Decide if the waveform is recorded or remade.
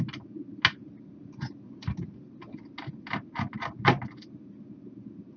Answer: recorded